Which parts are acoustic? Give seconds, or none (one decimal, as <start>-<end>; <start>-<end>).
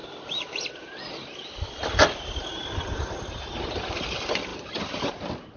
0.0-1.0; 1.8-4.0